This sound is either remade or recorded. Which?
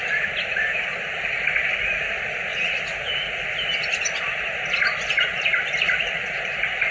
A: recorded